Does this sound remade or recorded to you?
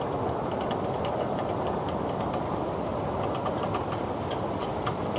recorded